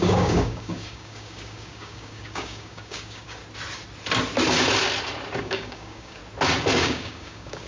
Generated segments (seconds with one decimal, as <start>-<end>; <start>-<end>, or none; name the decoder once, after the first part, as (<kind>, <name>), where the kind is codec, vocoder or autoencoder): 0.0-3.4 (codec, DAC); 5.4-6.2; 6.8-7.7